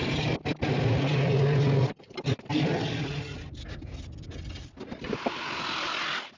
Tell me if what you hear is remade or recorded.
recorded